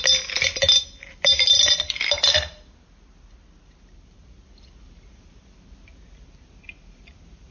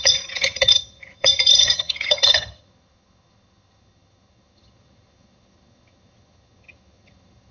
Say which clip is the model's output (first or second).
second